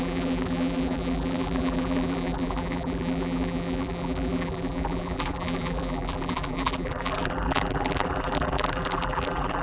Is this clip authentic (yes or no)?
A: no